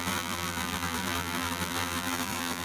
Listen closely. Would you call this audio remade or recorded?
remade